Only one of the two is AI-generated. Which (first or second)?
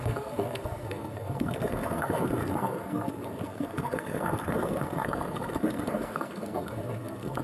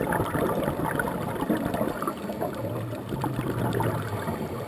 first